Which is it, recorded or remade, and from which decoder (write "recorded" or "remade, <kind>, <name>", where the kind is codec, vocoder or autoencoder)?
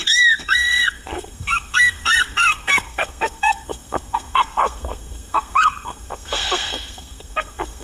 remade, codec, SNAC